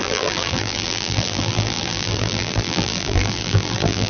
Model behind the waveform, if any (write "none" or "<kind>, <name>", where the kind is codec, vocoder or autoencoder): vocoder, BigVGAN v2